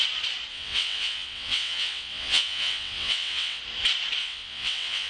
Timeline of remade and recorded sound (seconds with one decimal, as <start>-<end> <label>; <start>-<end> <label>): 0.0-0.5 recorded; 0.5-3.6 remade; 3.6-4.2 recorded; 4.2-5.1 remade